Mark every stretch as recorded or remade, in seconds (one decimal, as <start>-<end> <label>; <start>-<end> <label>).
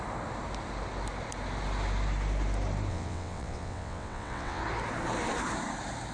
0.0-2.9 recorded; 2.9-4.6 remade; 4.6-6.1 recorded